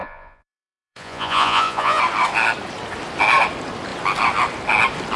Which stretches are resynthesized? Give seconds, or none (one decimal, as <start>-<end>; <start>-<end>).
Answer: 0.0-2.0